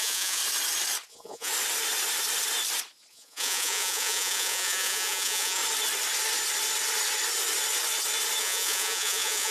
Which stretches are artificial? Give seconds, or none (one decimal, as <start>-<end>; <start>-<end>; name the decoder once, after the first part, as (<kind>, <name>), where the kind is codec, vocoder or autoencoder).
0.0-0.4 (vocoder, Vocos); 1.1-1.5; 3.1-5.6; 8.4-9.5